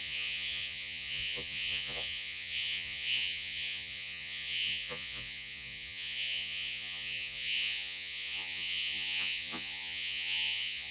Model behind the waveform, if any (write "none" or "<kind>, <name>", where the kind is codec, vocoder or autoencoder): vocoder, Vocos